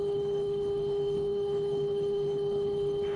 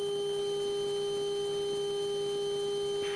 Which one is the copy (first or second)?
first